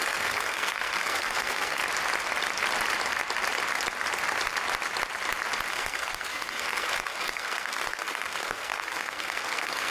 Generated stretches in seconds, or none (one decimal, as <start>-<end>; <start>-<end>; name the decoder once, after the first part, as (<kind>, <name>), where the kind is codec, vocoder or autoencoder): 0.0-1.8 (codec, SNAC); 5.7-9.9